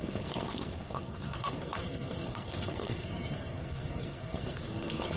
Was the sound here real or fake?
fake